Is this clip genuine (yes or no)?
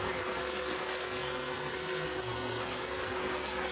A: no